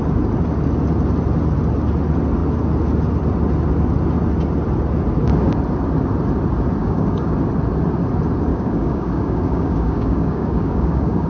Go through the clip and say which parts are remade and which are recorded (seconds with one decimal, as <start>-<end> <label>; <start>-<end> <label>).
0.0-6.8 recorded; 6.8-7.3 remade; 7.3-8.5 recorded; 8.5-11.3 remade